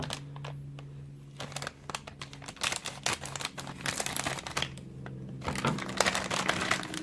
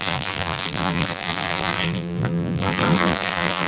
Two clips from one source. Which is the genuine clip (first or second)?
first